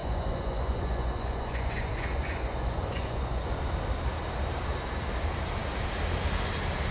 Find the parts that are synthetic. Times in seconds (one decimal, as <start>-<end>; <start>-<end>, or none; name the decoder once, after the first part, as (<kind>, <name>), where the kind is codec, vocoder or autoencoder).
0.0-3.6 (vocoder, Vocos)